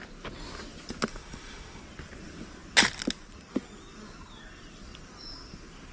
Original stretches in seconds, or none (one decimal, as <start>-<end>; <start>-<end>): 0.0-1.1; 1.8-5.9